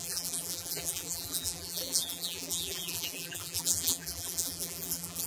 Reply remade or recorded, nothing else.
remade